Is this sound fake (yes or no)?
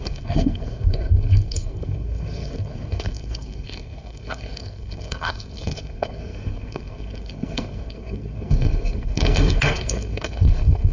yes